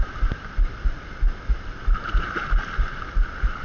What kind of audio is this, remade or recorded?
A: recorded